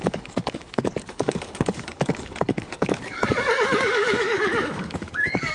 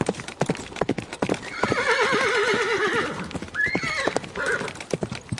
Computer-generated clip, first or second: first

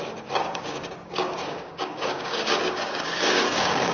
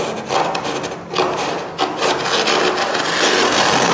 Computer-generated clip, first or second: first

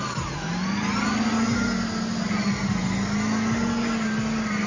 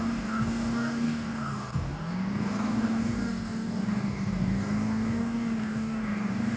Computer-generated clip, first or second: second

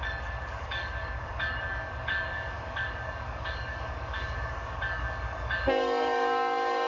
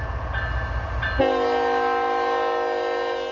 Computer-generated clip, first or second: first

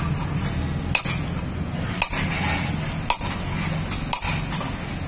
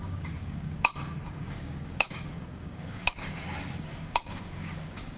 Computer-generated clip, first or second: second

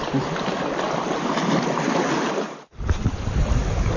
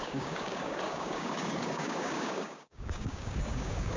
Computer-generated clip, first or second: second